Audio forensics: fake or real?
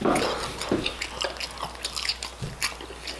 real